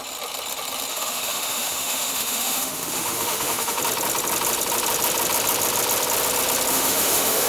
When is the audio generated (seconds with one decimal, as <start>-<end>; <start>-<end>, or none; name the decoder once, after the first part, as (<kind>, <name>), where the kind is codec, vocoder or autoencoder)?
0.9-3.8 (autoencoder, DAC-VAE); 6.7-7.5